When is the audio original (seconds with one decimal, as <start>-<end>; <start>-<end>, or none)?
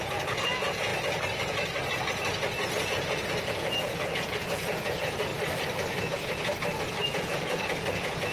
0.9-2.9; 5.3-6.0; 6.5-7.1